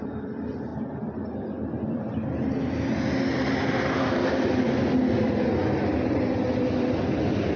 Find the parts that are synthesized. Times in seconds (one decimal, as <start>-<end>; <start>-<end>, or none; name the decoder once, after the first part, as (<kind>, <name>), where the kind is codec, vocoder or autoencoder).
none

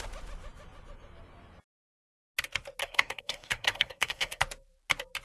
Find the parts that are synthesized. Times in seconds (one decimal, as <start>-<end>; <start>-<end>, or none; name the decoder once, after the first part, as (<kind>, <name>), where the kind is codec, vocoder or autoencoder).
2.8-4.4 (codec, SNAC)

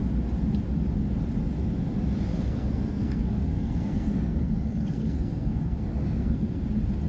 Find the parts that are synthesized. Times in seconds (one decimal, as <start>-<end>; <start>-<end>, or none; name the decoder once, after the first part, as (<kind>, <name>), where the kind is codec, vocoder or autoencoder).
2.3-6.6 (codec, SNAC)

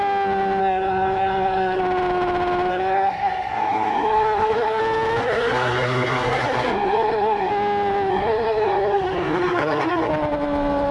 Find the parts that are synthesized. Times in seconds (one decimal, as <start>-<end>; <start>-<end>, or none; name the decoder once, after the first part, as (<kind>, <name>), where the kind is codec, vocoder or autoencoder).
0.6-1.8 (codec, SNAC); 2.7-4.8; 5.2-7.5; 8.1-10.1

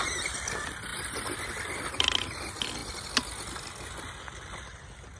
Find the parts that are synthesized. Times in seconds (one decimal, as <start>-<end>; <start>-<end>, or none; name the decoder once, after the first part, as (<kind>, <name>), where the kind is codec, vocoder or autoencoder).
none